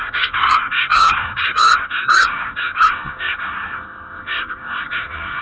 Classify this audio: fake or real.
fake